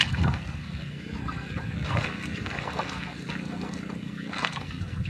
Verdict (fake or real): fake